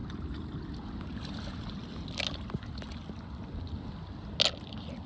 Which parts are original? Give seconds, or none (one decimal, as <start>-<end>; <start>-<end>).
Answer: 0.0-5.1